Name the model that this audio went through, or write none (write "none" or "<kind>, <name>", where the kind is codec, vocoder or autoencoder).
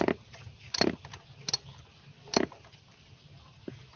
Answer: none